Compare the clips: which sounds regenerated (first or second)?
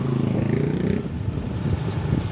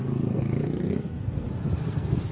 second